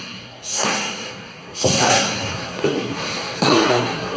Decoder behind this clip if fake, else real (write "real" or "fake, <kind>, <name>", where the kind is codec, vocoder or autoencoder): fake, codec, SNAC